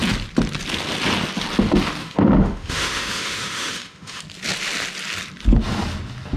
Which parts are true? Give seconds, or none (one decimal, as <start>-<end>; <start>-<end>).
0.0-2.0; 4.2-6.4